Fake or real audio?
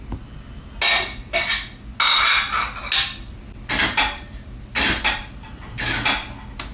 real